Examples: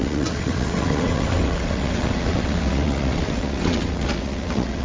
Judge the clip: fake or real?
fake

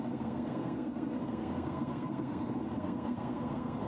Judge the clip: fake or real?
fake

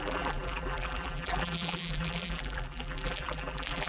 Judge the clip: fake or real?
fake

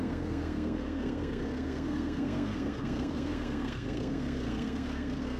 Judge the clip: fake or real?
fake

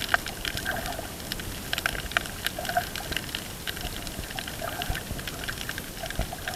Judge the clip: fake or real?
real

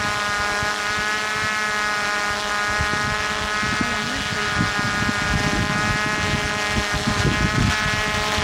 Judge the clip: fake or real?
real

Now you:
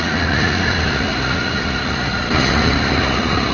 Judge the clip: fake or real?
fake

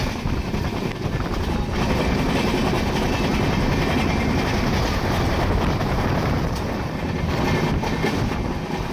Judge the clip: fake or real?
real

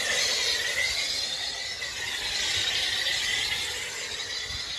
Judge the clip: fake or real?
real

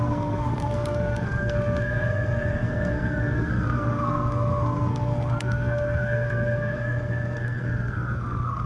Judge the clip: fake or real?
fake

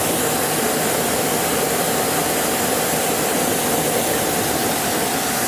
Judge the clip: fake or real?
fake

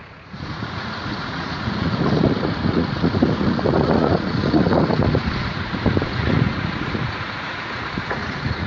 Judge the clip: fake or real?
fake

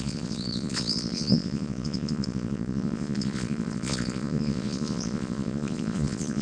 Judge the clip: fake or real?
fake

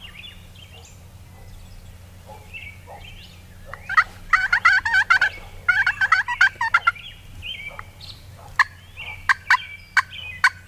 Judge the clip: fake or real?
real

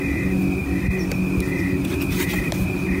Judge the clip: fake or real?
real